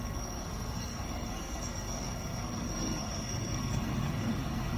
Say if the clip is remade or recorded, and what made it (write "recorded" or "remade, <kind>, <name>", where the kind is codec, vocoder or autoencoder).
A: remade, codec, SNAC